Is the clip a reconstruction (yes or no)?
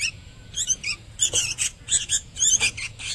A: yes